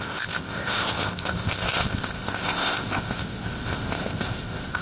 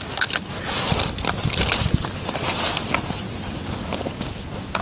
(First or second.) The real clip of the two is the second